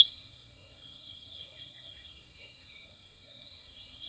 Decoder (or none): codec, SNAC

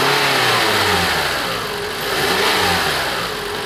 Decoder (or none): none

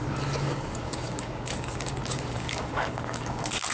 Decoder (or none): codec, DAC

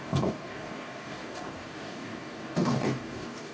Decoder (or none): codec, DAC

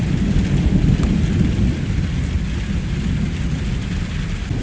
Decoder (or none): none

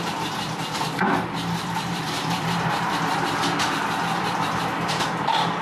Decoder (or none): vocoder, BigVGAN v2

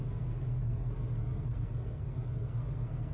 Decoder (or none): codec, SNAC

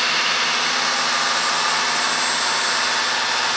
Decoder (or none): none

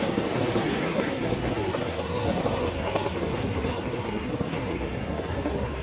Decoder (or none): codec, SNAC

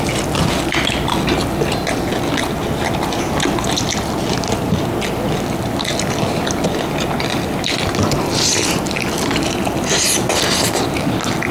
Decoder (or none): none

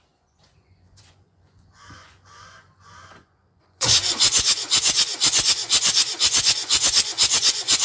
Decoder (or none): vocoder, Vocos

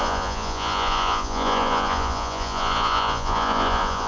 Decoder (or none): vocoder, Vocos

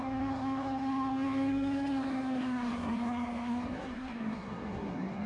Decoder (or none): codec, SNAC